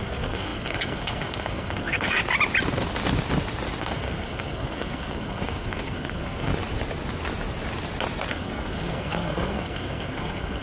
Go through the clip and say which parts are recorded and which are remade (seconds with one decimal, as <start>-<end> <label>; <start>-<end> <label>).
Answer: 0.0-2.2 remade; 2.2-3.8 recorded; 3.8-6.5 remade; 6.5-8.3 recorded; 8.3-10.6 remade